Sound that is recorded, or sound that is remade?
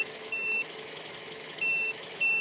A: remade